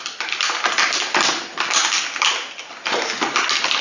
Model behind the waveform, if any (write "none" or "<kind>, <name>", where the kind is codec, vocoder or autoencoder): none